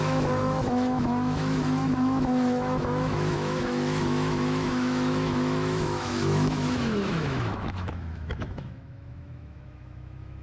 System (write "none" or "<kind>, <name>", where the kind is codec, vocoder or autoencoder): autoencoder, DAC-VAE